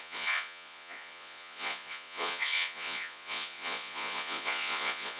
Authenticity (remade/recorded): remade